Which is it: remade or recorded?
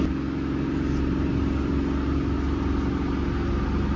recorded